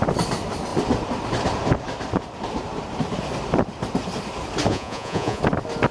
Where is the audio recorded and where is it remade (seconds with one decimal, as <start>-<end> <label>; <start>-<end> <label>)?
0.0-4.7 recorded; 4.7-5.4 remade; 5.4-5.9 recorded